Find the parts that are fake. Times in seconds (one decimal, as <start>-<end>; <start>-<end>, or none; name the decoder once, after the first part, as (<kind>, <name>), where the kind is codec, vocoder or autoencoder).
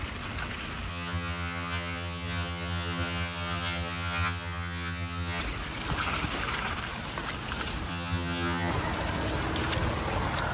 0.9-5.4 (vocoder, HiFi-GAN); 7.9-8.7